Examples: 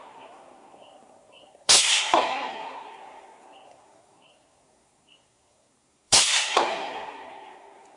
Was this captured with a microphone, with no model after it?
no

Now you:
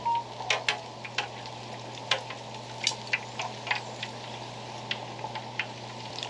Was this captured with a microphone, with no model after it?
yes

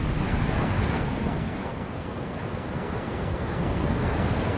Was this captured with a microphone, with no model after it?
no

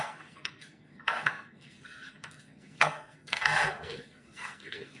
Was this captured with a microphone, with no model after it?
no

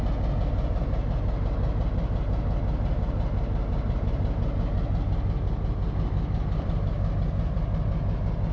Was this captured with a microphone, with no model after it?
yes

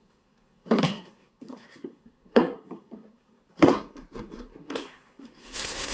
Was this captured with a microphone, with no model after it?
no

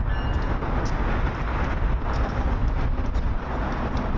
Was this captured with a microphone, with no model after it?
yes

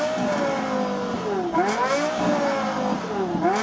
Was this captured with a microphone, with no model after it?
yes